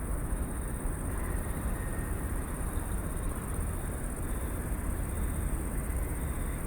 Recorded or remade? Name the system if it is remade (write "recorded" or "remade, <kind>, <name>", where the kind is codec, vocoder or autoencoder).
recorded